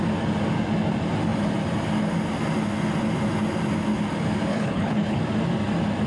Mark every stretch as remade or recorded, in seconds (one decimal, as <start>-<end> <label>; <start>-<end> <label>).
0.0-4.5 recorded; 4.5-5.2 remade; 5.2-6.1 recorded